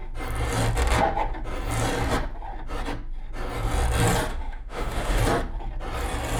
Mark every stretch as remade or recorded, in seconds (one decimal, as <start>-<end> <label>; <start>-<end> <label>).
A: 0.0-4.3 recorded; 4.3-5.2 remade; 5.2-6.4 recorded